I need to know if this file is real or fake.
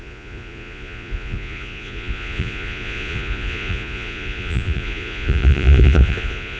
fake